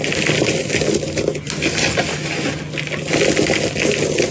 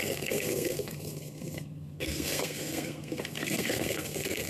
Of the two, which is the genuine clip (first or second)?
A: first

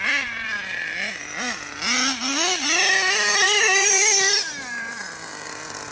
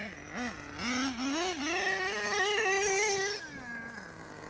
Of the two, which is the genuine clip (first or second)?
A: second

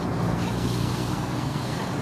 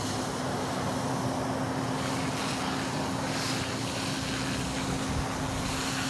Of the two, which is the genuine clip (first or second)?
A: second